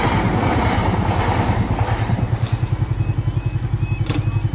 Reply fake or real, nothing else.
real